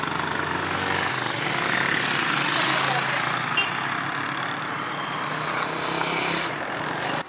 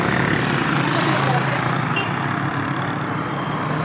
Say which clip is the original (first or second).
first